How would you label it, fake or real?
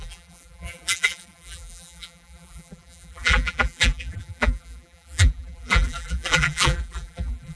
fake